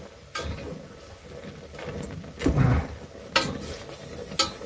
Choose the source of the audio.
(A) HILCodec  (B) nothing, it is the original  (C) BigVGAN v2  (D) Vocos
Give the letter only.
B